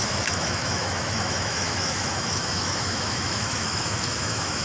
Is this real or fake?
fake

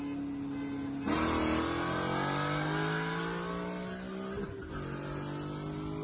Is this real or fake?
real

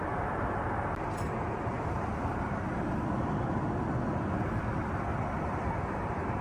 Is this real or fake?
fake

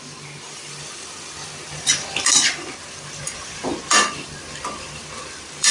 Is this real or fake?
fake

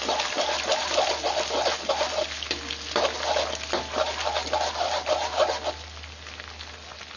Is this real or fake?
real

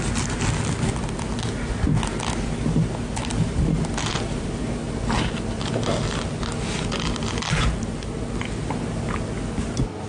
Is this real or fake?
real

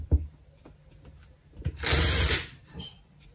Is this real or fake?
real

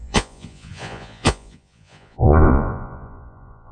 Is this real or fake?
fake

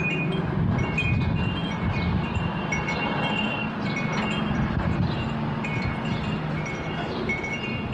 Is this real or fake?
fake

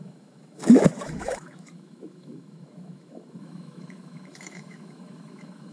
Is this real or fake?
fake